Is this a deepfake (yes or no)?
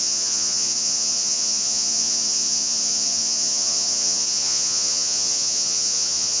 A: yes